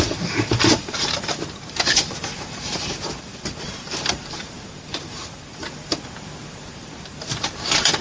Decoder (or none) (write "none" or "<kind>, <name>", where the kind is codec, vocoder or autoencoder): vocoder, BigVGAN v2